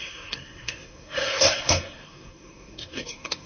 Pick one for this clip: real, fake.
fake